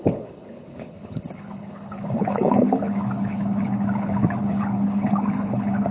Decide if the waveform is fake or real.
fake